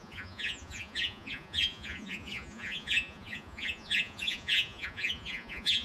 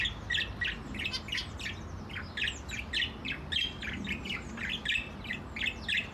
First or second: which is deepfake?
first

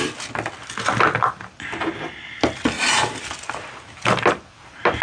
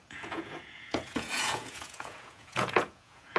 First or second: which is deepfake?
second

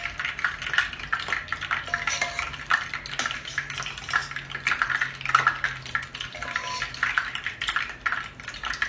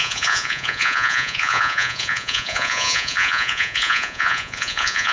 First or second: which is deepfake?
second